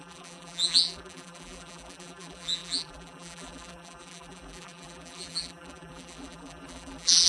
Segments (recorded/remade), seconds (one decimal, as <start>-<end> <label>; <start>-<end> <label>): 0.0-7.3 remade